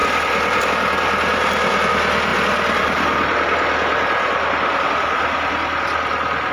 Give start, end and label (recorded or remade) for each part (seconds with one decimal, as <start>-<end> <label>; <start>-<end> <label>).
0.0-0.7 remade; 0.7-2.3 recorded; 2.3-6.5 remade